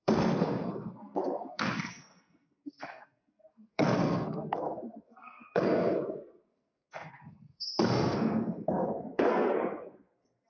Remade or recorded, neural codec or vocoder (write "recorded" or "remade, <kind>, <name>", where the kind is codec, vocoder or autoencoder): remade, codec, SNAC